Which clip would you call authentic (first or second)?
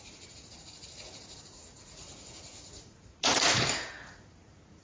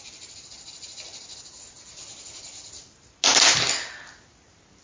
second